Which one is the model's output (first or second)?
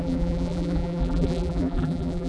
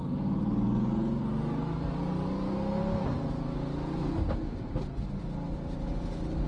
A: first